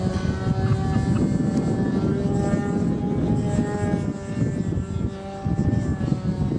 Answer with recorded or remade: recorded